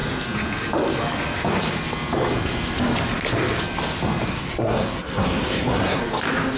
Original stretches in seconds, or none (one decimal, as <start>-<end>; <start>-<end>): 0.0-4.3; 6.0-6.6